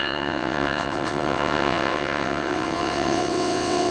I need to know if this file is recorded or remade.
remade